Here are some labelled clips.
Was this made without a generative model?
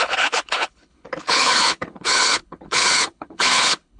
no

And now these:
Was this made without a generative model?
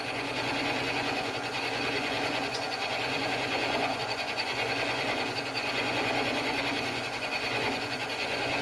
no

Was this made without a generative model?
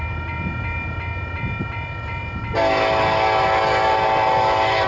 yes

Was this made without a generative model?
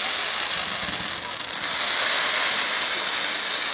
yes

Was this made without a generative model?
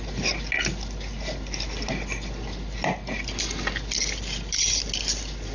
yes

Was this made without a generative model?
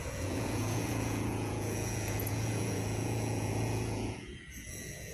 no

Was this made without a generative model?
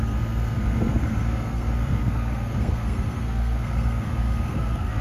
no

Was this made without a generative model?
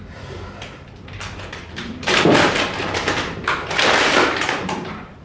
no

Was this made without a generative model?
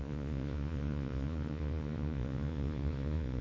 no